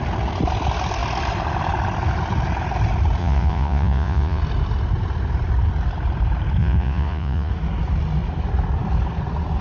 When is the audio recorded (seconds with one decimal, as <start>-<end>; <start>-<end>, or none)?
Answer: 0.0-3.2; 4.4-6.6; 7.5-9.6

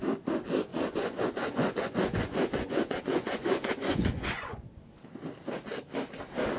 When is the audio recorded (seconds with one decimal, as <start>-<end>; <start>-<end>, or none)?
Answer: 0.0-0.7; 4.7-6.6

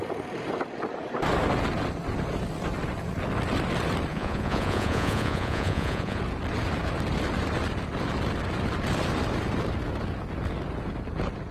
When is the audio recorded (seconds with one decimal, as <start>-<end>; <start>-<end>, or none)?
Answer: 0.0-4.1; 6.2-11.5

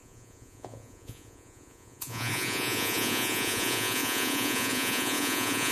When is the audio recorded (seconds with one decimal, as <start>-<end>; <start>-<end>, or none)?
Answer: none

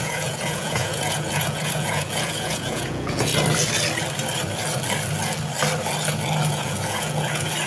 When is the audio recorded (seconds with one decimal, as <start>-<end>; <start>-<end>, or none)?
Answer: 3.3-6.5

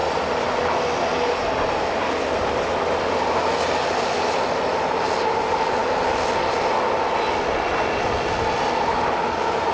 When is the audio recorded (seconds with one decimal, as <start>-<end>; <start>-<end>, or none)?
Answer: 0.0-9.7

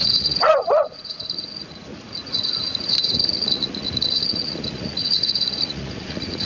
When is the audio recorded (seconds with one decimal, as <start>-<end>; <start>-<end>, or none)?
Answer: none